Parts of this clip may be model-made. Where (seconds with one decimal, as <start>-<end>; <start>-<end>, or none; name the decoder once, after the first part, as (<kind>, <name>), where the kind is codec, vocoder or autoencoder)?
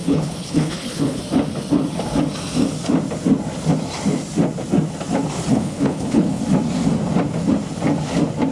0.0-1.2 (codec, HILCodec); 5.5-6.4